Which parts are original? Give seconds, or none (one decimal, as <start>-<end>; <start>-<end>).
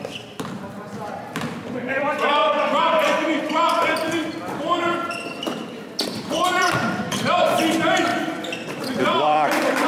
2.4-2.9